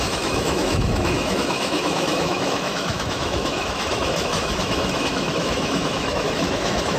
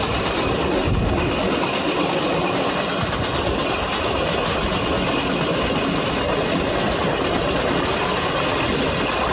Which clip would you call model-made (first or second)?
first